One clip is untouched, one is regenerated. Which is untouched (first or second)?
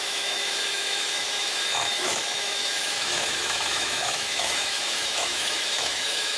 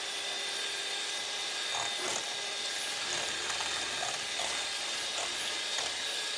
second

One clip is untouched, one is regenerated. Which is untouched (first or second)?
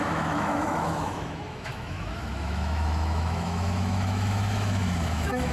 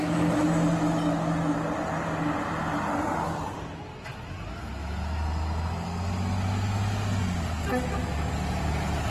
second